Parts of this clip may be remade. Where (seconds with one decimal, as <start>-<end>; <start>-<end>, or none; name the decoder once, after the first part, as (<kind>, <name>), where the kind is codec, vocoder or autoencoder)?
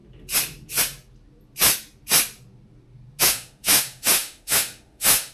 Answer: 3.2-5.3 (autoencoder, DAC-VAE)